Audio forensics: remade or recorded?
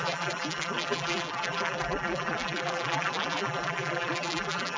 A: remade